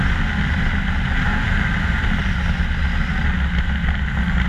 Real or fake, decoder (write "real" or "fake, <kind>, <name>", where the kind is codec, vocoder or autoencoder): real